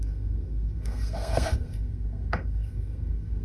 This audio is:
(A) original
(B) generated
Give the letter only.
B